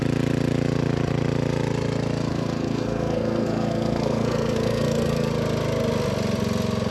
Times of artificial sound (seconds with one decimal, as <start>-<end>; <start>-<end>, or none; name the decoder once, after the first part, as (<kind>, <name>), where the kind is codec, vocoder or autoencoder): 2.3-5.3 (codec, SNAC)